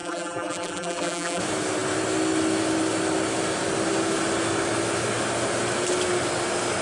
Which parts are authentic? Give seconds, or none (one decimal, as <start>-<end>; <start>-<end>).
1.4-6.8